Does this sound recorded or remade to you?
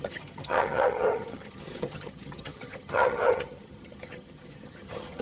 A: remade